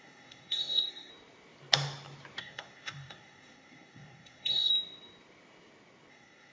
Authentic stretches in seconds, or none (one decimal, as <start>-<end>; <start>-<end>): 1.1-2.4; 4.7-6.1